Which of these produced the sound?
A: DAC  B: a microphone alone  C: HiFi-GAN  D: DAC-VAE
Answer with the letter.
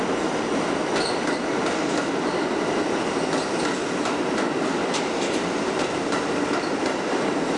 B